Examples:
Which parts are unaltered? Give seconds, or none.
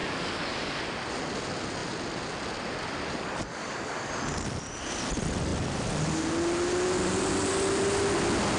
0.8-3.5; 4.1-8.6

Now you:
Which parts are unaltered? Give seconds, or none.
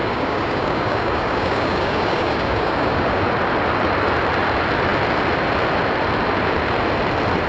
3.2-7.5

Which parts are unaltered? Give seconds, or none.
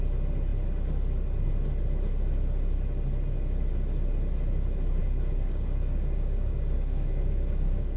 0.0-5.0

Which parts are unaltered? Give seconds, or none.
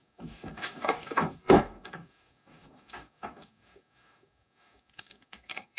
none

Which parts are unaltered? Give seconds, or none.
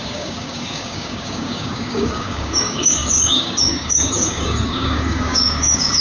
none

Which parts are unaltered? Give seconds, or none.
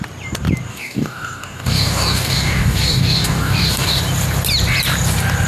0.0-0.7; 4.0-5.5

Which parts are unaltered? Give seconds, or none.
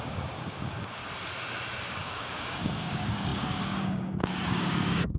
1.0-1.8